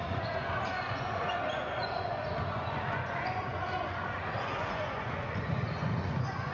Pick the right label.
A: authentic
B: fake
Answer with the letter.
B